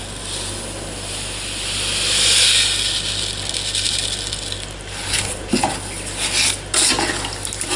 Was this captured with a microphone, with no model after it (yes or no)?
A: yes